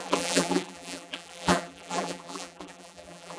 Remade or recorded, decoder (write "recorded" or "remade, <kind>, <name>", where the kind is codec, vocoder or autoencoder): remade, vocoder, BigVGAN v2